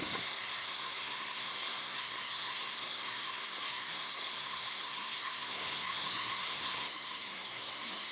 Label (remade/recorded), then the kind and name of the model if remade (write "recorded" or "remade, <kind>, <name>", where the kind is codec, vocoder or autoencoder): remade, codec, SNAC